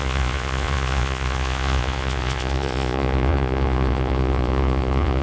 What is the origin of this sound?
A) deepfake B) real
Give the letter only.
A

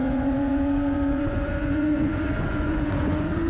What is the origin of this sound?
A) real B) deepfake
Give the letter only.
B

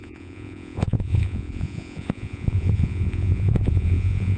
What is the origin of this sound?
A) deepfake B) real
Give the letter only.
A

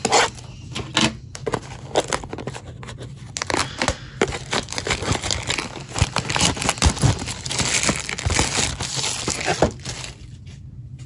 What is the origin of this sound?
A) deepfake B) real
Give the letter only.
B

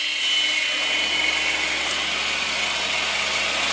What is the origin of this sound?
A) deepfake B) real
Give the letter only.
B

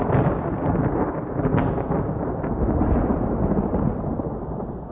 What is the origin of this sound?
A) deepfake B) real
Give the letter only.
B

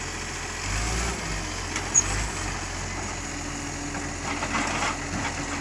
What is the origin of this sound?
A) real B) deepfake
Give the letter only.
A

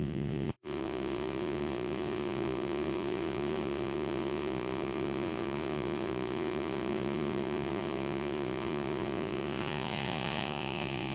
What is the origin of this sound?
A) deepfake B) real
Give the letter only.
A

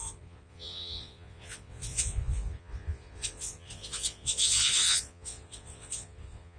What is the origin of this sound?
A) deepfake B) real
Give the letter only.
A